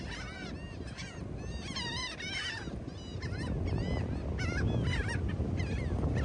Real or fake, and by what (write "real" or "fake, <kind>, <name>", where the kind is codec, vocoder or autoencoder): real